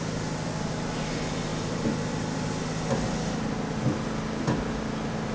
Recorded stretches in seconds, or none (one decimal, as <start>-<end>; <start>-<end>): 0.0-5.3